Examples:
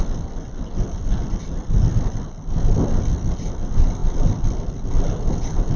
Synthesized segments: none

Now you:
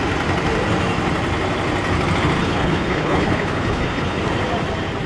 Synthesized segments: 2.4-4.2

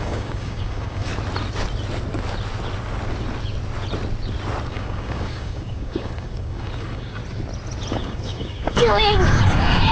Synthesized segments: 0.0-1.1; 4.7-7.2; 7.9-9.9

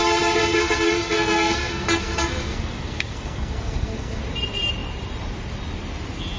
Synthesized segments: 0.4-4.2

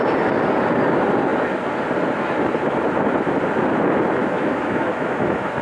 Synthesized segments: 4.2-5.6